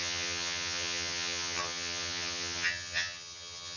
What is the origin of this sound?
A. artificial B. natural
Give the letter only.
A